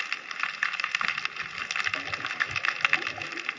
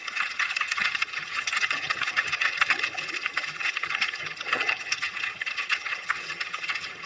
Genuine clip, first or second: first